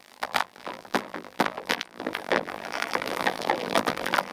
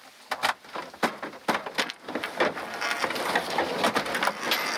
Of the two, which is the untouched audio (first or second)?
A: second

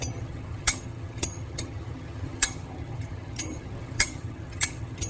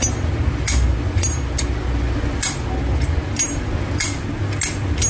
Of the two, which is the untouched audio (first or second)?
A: second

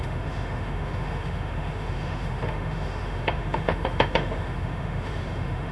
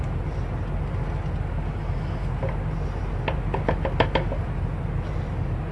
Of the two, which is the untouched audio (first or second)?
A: second